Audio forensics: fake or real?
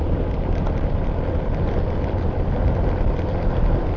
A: real